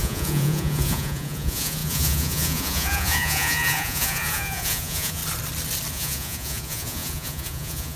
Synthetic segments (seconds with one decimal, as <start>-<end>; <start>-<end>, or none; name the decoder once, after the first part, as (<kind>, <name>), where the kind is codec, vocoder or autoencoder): 0.0-5.2 (vocoder, Vocos); 5.9-8.0